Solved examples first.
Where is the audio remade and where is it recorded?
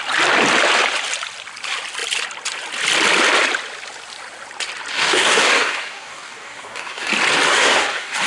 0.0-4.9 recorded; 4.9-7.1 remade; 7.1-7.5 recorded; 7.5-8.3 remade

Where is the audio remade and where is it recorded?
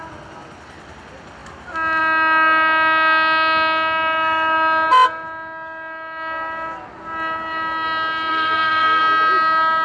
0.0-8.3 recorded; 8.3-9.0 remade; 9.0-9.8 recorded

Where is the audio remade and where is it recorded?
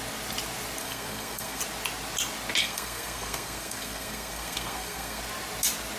0.0-0.8 recorded; 0.8-1.6 remade; 1.6-2.6 recorded; 2.6-5.2 remade; 5.2-6.0 recorded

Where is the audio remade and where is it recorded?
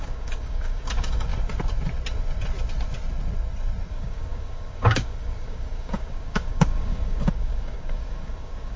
0.0-1.3 remade; 1.3-3.9 recorded; 3.9-8.8 remade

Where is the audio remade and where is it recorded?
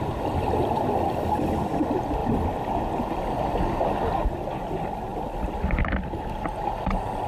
0.0-2.2 recorded; 2.2-3.4 remade; 3.4-7.3 recorded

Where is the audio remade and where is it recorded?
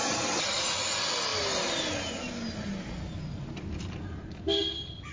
0.0-5.1 recorded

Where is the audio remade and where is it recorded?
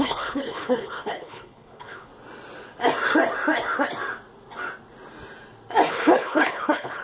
0.0-2.1 remade; 2.1-5.9 recorded; 5.9-7.0 remade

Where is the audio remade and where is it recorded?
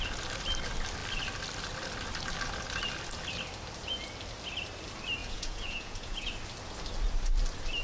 0.0-5.2 recorded; 5.2-6.3 remade; 6.3-7.8 recorded